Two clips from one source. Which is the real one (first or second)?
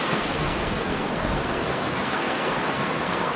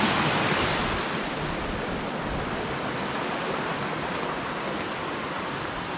second